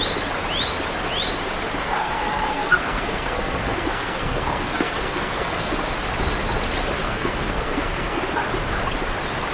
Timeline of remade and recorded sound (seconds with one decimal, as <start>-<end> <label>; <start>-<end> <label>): 0.0-1.8 recorded; 1.8-5.7 remade; 5.7-7.0 recorded; 7.0-8.2 remade; 8.2-9.5 recorded